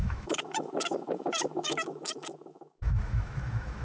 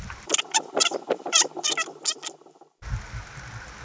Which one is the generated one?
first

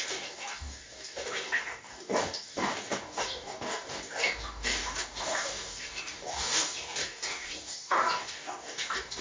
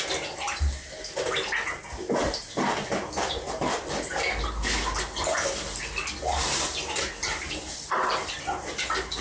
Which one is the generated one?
first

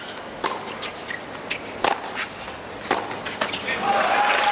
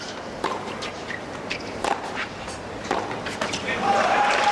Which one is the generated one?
second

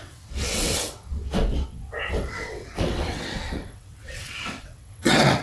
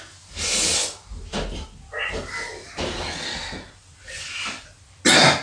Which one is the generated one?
first